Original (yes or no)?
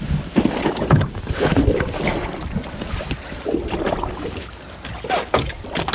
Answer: yes